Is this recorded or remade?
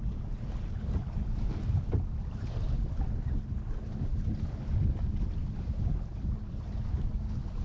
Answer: recorded